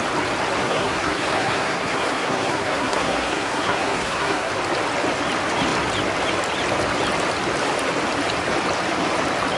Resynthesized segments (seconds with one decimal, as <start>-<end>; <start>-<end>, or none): 0.6-4.5